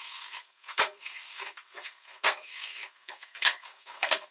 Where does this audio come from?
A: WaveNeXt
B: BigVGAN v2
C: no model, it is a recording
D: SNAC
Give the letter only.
D